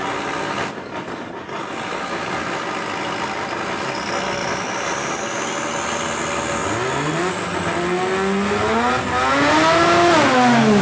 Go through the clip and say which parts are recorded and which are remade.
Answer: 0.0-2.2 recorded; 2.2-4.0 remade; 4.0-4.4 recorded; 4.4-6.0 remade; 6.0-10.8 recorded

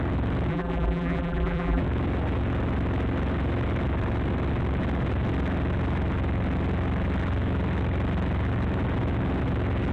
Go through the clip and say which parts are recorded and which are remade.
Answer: 0.0-0.5 recorded; 0.5-1.8 remade; 1.8-9.9 recorded